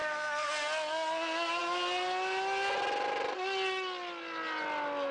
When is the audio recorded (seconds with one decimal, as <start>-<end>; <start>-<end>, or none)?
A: 0.5-5.1